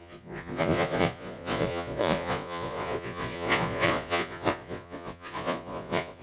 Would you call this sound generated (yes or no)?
yes